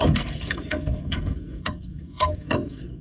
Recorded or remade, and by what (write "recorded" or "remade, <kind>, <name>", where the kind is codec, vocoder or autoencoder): remade, codec, SNAC